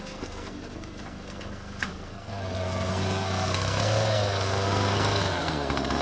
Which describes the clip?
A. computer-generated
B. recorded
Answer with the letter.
A